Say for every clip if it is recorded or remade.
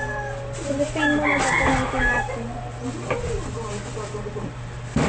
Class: recorded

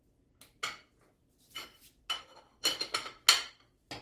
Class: recorded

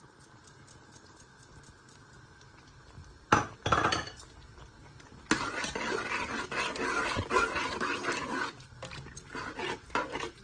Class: recorded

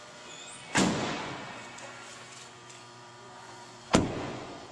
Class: remade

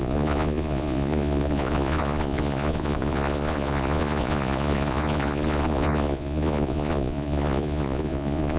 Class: remade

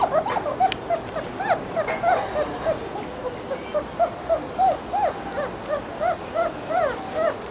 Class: recorded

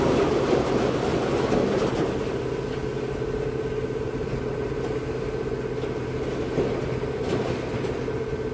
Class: recorded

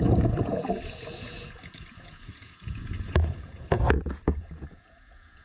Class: remade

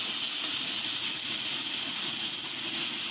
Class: remade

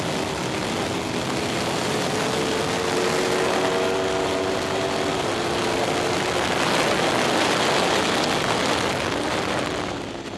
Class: recorded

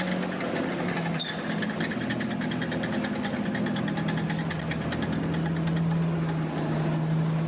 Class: recorded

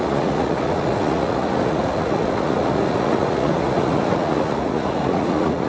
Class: remade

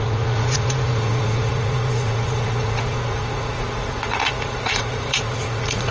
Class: remade